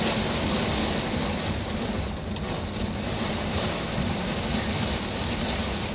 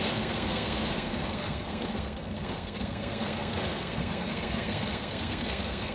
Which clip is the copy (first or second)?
second